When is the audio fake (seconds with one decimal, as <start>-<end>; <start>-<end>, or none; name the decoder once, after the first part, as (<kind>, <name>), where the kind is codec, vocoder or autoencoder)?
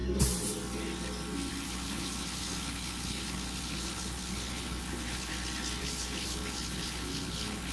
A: 1.5-5.3 (codec, HILCodec); 5.8-7.7